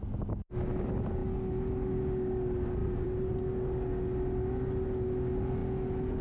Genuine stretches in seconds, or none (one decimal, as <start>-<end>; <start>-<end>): 0.0-2.8; 3.4-6.2